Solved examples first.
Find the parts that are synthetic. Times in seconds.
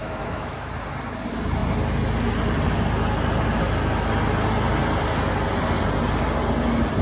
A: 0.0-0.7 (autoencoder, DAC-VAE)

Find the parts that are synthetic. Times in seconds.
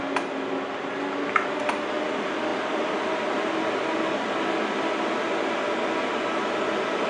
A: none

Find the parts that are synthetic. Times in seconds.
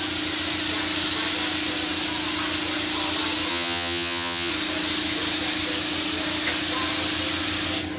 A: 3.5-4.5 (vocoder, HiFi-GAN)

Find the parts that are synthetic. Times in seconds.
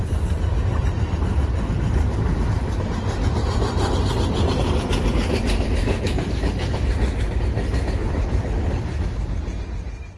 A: 5.8-6.4 (codec, SNAC)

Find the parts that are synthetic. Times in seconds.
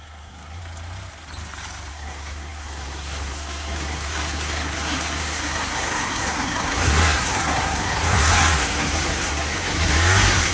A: 0.0-0.6 (codec, SNAC); 1.9-10.5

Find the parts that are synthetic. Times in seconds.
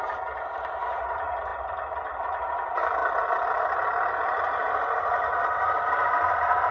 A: none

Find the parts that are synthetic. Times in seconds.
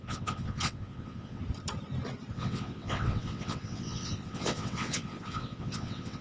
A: 0.0-1.4 (vocoder, WaveNeXt); 2.3-6.2